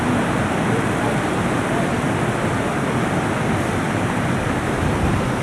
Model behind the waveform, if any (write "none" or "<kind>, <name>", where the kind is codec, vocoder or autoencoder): none